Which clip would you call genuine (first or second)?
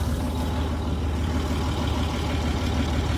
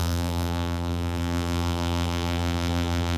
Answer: first